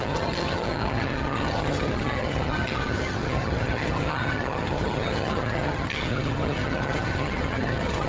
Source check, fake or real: fake